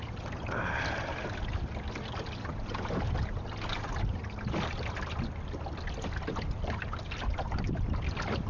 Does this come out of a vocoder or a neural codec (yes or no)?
no